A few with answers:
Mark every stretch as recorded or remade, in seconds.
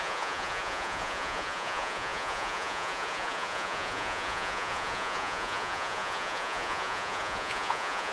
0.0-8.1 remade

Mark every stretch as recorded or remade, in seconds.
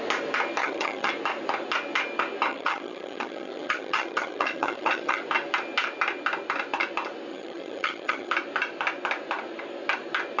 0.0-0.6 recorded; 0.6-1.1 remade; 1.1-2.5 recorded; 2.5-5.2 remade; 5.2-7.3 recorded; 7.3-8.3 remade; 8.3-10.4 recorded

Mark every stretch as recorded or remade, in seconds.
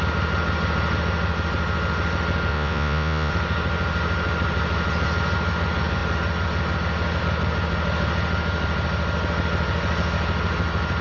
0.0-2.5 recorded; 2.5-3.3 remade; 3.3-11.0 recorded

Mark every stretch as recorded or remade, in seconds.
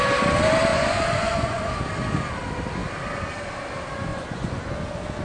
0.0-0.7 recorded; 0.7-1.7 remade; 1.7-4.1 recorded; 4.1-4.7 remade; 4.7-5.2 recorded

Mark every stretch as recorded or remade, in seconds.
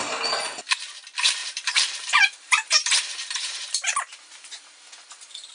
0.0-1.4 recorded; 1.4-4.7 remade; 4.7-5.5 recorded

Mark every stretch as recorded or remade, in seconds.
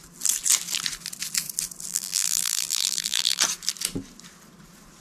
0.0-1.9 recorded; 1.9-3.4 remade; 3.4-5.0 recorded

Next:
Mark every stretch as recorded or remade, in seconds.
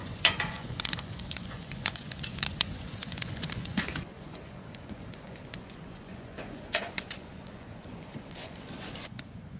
0.0-9.6 remade